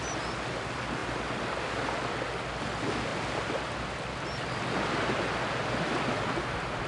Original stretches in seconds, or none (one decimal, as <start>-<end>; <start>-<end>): 0.0-6.9